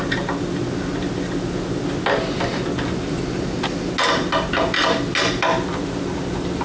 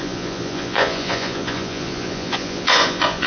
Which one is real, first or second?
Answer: first